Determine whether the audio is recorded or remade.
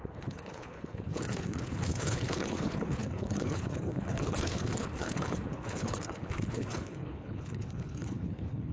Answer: remade